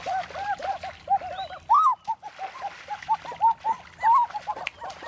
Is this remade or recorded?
recorded